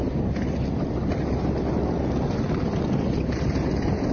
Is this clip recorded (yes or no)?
yes